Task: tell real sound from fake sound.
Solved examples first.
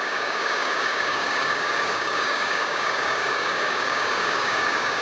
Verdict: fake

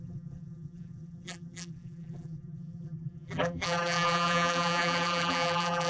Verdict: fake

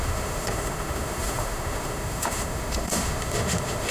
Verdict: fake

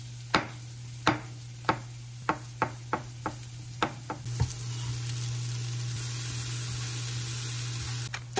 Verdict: real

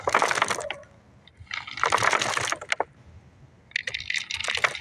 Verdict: real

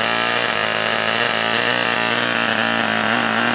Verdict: real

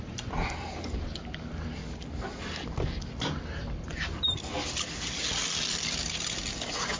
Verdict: real